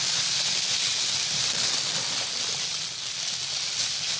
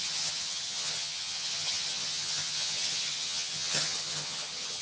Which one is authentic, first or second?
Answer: first